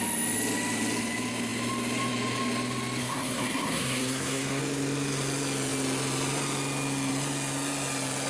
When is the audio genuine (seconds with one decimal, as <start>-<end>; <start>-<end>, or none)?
0.0-3.0; 4.6-8.3